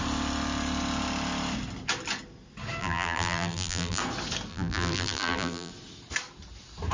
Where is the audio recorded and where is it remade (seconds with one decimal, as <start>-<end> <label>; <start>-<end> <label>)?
0.0-2.8 recorded; 2.8-4.0 remade; 4.0-4.5 recorded; 4.5-5.7 remade; 5.7-6.9 recorded